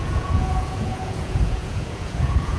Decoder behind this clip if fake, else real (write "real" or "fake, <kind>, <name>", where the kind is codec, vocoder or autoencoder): fake, vocoder, Vocos